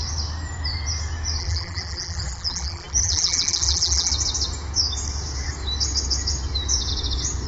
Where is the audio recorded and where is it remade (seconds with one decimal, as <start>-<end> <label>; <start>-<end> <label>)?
0.0-1.4 recorded; 1.4-4.1 remade; 4.1-7.5 recorded

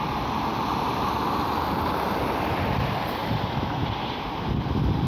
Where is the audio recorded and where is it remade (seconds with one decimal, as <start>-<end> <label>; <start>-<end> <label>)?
0.0-3.2 recorded; 3.2-5.1 remade